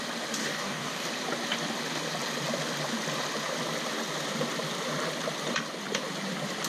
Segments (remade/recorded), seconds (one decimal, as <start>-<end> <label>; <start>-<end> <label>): 0.0-0.4 recorded; 0.4-1.1 remade; 1.1-6.7 recorded